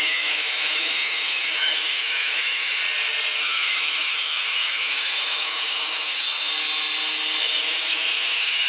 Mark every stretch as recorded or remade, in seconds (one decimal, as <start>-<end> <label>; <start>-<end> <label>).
0.0-2.8 remade; 2.8-3.4 recorded; 3.4-6.5 remade; 6.5-7.4 recorded; 7.4-8.7 remade